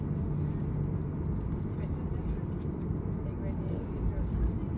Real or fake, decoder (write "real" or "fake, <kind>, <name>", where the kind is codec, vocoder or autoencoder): real